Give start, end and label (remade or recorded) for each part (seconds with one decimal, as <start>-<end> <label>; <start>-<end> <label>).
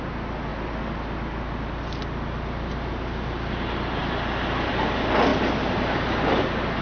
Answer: 0.0-6.8 recorded